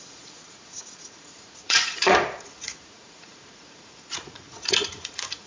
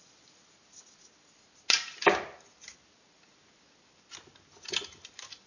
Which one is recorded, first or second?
second